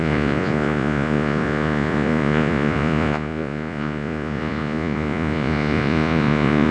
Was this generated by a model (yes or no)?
yes